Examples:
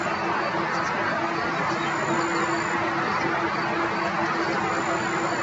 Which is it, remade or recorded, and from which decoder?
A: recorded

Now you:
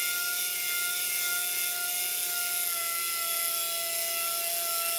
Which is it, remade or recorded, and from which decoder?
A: recorded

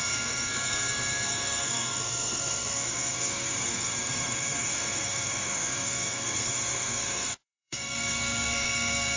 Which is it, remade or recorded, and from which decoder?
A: remade, codec, SNAC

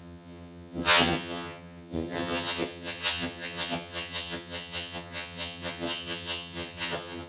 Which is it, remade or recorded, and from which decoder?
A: remade, vocoder, HiFi-GAN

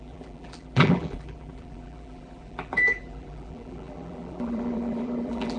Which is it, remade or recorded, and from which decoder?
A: remade, vocoder, BigVGAN v2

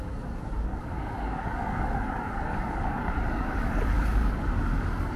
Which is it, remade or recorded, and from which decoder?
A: remade, codec, DAC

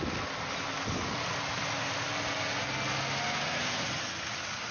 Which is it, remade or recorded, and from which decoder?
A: recorded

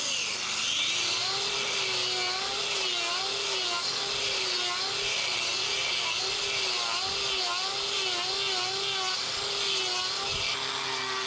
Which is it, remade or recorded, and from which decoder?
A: recorded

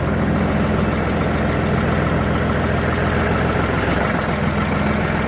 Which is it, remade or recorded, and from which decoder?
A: recorded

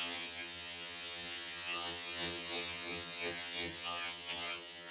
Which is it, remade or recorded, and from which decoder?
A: remade, vocoder, HiFi-GAN